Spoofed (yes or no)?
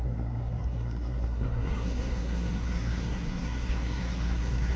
yes